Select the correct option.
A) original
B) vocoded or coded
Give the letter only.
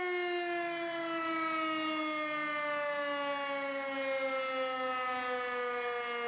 A